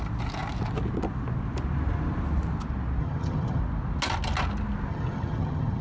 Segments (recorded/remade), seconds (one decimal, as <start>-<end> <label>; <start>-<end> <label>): 0.0-3.0 recorded; 3.0-3.6 remade; 3.6-4.9 recorded; 4.9-5.8 remade